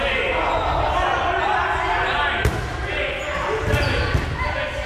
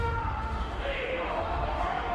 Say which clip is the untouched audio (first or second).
first